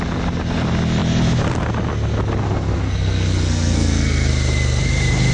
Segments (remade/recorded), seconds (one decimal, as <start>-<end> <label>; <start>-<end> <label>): 0.0-2.4 recorded; 2.4-4.3 remade; 4.3-5.3 recorded